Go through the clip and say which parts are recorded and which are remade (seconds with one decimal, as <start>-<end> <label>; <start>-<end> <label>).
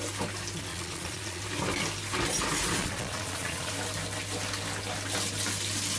0.0-0.7 recorded; 0.7-1.4 remade; 1.4-2.8 recorded; 2.8-3.7 remade; 3.7-6.0 recorded